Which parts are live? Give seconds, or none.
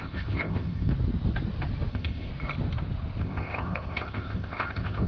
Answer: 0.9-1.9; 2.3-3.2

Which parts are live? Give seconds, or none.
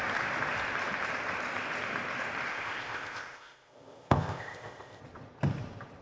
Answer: 0.0-2.5; 5.0-6.0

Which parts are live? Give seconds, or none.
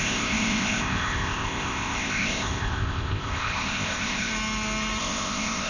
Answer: 4.3-5.0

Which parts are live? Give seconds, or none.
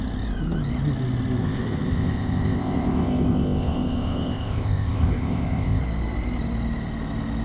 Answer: 0.0-1.4; 5.8-7.4